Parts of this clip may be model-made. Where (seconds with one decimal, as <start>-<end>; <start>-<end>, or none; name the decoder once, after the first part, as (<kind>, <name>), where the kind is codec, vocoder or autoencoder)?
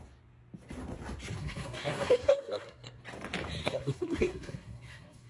1.4-3.0 (codec, SNAC); 3.6-5.3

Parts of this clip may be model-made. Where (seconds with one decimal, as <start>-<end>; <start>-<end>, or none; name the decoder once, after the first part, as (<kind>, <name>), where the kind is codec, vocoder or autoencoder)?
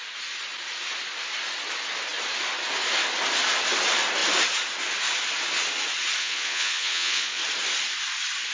6.2-7.4 (vocoder, Vocos)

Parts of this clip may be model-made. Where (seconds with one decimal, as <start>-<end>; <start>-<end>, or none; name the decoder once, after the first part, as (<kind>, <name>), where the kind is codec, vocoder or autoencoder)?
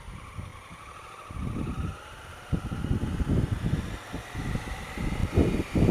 none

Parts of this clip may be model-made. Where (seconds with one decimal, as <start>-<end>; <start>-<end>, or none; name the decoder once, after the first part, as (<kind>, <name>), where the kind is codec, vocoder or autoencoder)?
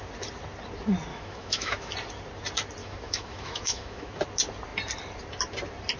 1.1-1.9 (autoencoder, DAC-VAE); 2.8-4.1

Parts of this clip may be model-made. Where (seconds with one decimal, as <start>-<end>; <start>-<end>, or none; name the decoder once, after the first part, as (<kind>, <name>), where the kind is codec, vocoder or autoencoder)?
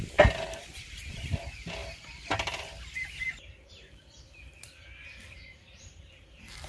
0.0-1.8 (vocoder, BigVGAN v2); 3.7-6.7